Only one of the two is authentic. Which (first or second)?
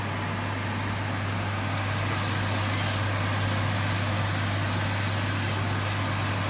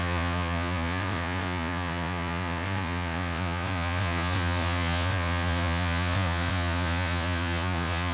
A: first